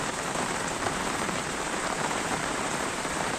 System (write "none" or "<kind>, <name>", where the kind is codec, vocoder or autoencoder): vocoder, BigVGAN v2